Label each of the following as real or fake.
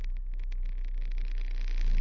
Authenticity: real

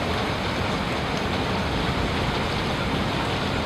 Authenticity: real